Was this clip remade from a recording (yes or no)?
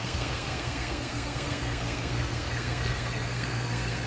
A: yes